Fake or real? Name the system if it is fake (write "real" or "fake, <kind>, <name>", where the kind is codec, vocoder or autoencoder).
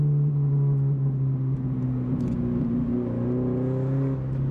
real